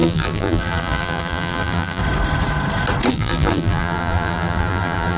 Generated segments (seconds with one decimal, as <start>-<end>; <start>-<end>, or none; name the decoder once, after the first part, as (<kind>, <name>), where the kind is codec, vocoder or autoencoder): 0.0-2.0 (vocoder, BigVGAN v2); 3.1-5.2